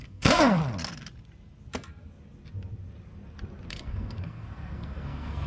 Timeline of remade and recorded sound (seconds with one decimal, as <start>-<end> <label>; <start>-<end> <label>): 0.0-0.6 remade; 0.6-3.7 recorded; 3.7-5.5 remade